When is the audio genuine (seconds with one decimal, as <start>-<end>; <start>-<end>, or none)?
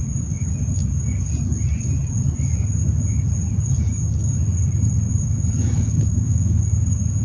0.0-5.6; 6.6-7.2